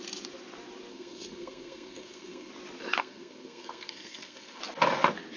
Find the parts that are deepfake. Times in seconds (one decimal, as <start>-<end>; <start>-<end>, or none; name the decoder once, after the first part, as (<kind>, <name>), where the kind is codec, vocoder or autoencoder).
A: 0.9-2.5 (codec, SNAC); 3.0-4.6